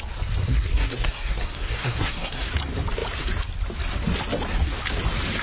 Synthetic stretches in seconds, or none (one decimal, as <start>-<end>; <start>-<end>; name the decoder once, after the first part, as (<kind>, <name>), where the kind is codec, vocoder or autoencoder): 0.4-2.5 (codec, SNAC)